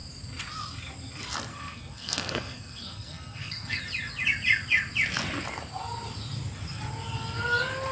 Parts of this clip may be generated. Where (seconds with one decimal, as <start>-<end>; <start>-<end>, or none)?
1.5-3.8